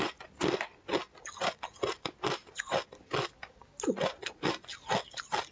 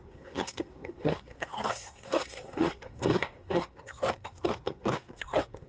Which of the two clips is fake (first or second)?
second